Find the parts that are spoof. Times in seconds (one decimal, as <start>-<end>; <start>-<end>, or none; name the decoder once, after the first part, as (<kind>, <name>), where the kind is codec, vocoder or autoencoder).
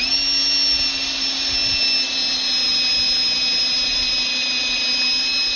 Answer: none